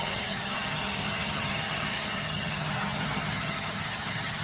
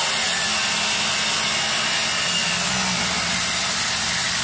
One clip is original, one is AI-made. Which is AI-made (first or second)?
first